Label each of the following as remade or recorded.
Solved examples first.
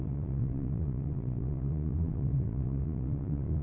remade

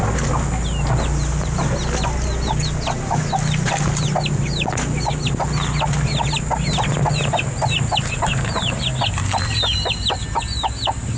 recorded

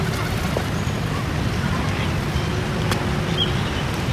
recorded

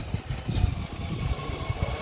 recorded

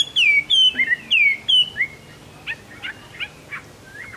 recorded